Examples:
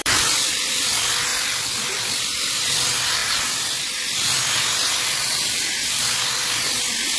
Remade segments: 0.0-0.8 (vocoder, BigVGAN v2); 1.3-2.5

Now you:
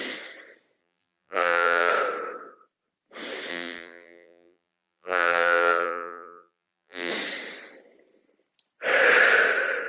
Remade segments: 0.8-1.9 (vocoder, BigVGAN v2); 3.5-7.1